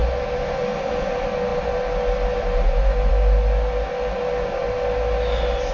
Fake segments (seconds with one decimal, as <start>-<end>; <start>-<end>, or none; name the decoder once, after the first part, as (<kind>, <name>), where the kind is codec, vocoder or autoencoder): none